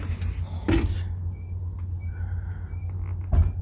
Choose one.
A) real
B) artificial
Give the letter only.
A